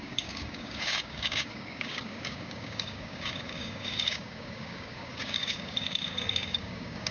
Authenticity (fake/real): fake